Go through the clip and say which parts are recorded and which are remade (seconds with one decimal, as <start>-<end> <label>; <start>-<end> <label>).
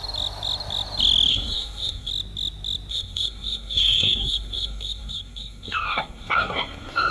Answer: 0.0-1.3 recorded; 1.3-2.1 remade; 2.1-2.9 recorded; 2.9-7.1 remade